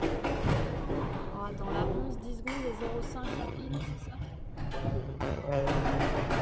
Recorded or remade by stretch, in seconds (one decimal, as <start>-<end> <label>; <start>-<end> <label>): 0.0-3.3 recorded; 3.3-4.4 remade; 4.4-5.0 recorded; 5.0-5.6 remade; 5.6-6.4 recorded